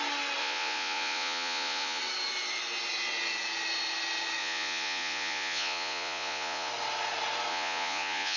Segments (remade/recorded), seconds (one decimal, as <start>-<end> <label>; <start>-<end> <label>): 0.0-0.4 recorded; 0.4-2.0 remade; 2.0-4.4 recorded; 4.4-6.7 remade; 6.7-7.5 recorded; 7.5-8.4 remade